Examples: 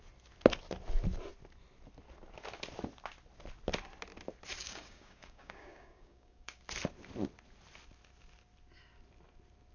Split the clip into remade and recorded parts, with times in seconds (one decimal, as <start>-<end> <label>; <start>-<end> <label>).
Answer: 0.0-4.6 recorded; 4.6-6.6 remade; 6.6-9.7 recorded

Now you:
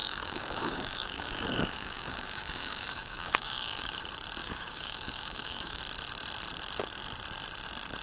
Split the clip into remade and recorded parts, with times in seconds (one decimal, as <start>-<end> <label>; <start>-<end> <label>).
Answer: 0.0-4.0 remade; 4.0-4.4 recorded; 4.4-5.8 remade; 5.8-8.0 recorded

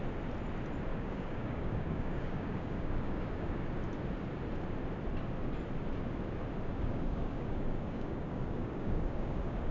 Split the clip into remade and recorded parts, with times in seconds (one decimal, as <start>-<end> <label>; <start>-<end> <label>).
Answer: 0.0-0.9 recorded; 0.9-3.7 remade; 3.7-6.7 recorded; 6.7-9.7 remade